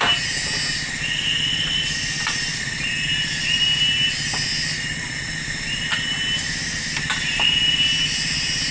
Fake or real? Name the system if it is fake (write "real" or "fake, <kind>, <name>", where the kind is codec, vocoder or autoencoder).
real